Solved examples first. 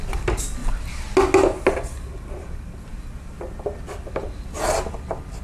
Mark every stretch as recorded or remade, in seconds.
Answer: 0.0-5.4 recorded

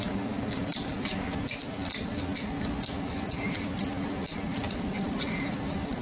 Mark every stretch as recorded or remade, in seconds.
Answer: 0.0-6.0 recorded

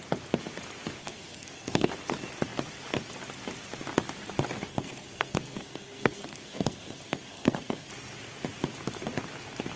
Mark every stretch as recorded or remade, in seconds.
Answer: 0.0-1.0 recorded; 1.0-1.9 remade; 1.9-4.7 recorded; 4.7-7.9 remade; 7.9-9.8 recorded

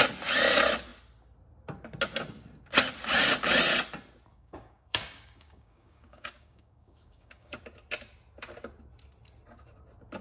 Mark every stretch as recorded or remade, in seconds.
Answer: 0.0-4.3 recorded; 4.3-7.6 remade; 7.6-10.2 recorded

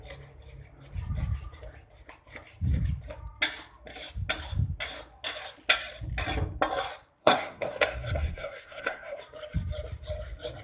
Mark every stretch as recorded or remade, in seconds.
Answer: 0.0-7.2 recorded; 7.2-9.2 remade; 9.2-10.6 recorded

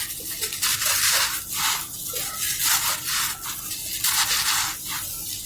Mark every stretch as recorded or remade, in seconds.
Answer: 0.0-5.5 recorded

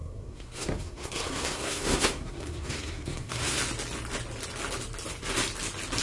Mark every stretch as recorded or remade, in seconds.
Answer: 0.0-3.6 remade; 3.6-6.0 recorded

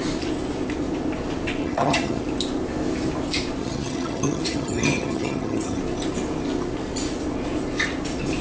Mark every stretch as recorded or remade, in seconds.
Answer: 0.0-1.6 recorded; 1.6-2.2 remade; 2.2-3.6 recorded; 3.6-5.8 remade; 5.8-8.4 recorded